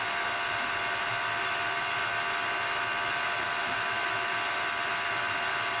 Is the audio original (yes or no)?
yes